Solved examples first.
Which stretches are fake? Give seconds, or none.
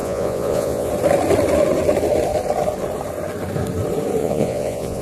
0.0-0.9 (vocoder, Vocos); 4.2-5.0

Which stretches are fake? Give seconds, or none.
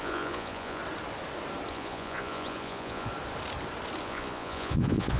0.0-0.8 (vocoder, Vocos); 1.7-3.1; 4.0-5.2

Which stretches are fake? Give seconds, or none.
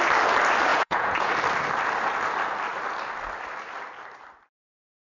0.7-1.3 (vocoder, Vocos)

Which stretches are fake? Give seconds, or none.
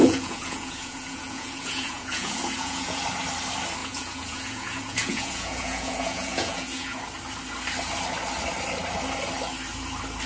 0.0-3.0 (vocoder, Vocos); 3.8-7.0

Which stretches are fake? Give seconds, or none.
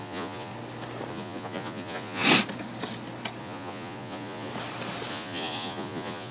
0.0-0.5 (vocoder, Vocos); 1.1-2.2; 3.4-4.5; 5.1-6.3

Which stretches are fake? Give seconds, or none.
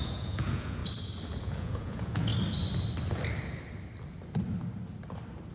0.0-0.8 (vocoder, Vocos); 1.4-2.3